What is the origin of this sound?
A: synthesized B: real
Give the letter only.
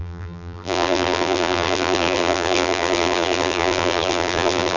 A